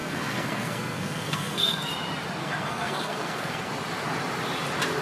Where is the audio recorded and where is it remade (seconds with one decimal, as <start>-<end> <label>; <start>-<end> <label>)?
0.0-1.9 remade; 1.9-2.4 recorded; 2.4-3.7 remade; 3.7-5.0 recorded